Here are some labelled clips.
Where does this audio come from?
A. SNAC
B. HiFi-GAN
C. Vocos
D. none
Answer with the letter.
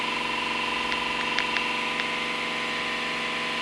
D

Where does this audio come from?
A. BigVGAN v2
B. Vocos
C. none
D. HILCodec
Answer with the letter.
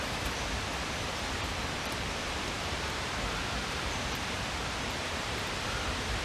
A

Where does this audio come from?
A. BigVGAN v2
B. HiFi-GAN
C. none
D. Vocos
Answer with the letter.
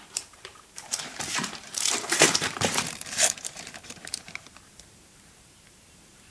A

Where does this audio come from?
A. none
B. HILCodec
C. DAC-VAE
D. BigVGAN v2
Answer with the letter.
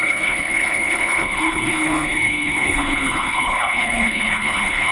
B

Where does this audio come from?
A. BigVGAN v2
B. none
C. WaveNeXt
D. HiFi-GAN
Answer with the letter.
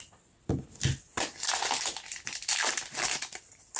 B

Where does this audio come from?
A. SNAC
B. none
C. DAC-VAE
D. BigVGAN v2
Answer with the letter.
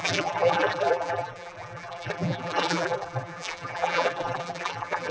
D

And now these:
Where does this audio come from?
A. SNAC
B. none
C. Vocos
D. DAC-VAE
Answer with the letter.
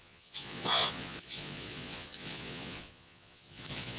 C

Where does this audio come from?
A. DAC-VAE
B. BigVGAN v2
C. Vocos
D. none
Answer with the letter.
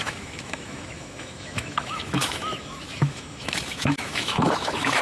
A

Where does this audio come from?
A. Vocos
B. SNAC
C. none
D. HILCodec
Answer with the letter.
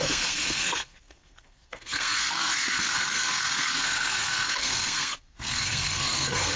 B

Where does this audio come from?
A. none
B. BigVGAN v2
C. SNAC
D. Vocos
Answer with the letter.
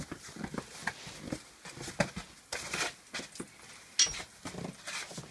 A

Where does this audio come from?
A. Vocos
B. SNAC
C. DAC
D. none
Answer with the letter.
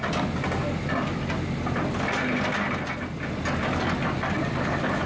D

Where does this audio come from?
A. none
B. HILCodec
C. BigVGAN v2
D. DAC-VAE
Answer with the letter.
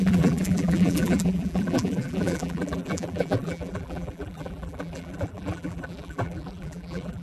C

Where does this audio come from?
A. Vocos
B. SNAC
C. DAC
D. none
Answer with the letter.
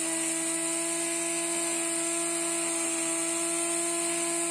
D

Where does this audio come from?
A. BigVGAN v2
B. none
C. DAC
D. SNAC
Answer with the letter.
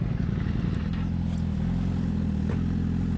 B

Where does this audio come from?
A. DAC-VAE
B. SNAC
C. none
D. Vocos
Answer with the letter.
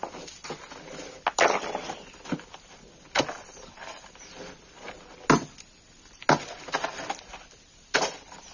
C